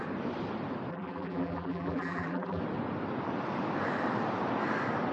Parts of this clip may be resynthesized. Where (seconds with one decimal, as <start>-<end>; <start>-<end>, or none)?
0.9-2.6